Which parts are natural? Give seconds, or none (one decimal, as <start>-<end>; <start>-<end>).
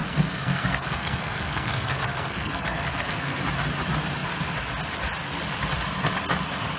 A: 3.4-6.8